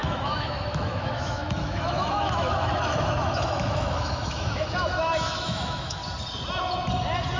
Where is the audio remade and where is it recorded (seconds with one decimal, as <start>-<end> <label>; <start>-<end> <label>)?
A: 0.0-6.0 remade; 6.0-7.4 recorded